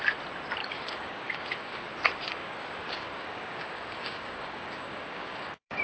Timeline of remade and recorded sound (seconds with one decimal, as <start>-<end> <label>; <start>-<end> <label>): 0.0-0.6 recorded; 0.6-1.9 remade; 1.9-2.4 recorded; 2.4-5.8 remade